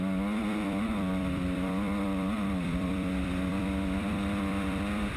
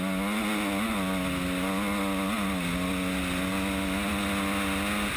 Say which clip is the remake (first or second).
first